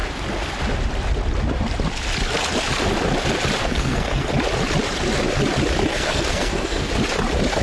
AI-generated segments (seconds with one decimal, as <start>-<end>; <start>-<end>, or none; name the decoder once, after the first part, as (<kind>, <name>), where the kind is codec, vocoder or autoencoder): 3.6-4.3 (codec, SNAC); 5.9-6.9